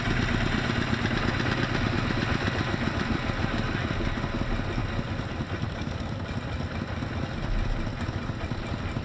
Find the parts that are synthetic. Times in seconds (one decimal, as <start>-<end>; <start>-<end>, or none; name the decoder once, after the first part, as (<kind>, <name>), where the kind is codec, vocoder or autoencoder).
none